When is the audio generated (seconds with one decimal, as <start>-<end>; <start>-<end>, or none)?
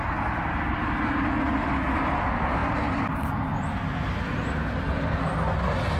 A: none